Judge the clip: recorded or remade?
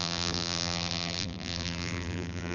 remade